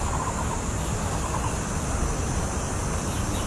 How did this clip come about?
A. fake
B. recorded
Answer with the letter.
B